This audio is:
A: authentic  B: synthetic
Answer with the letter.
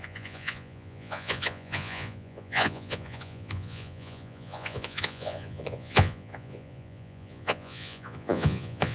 B